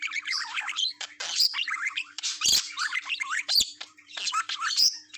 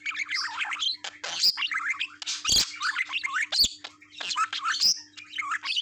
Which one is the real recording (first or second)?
second